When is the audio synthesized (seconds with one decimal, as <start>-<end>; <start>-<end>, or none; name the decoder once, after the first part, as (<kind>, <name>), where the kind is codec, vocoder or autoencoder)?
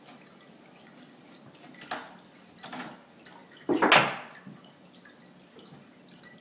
none